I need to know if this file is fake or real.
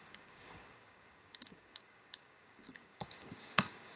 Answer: fake